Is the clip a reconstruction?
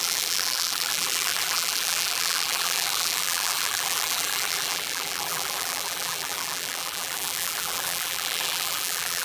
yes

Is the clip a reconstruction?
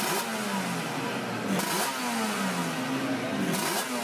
no